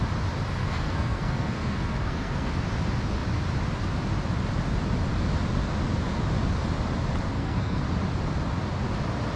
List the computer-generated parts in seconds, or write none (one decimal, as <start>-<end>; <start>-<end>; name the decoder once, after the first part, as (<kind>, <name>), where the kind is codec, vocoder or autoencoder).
0.6-2.5 (codec, SNAC); 7.3-7.8